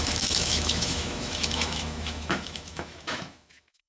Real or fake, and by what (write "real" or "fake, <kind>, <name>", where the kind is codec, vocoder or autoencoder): fake, autoencoder, DAC-VAE